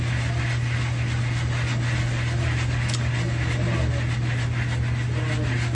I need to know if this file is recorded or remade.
recorded